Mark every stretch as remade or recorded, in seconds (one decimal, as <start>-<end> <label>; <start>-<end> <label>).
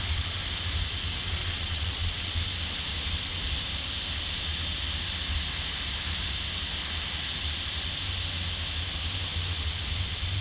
0.0-1.4 recorded; 1.4-2.4 remade; 2.4-10.4 recorded